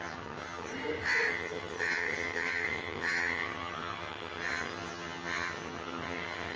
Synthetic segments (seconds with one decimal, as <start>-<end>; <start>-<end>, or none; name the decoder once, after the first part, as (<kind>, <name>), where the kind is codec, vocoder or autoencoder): 0.0-0.7 (vocoder, HiFi-GAN); 1.3-6.6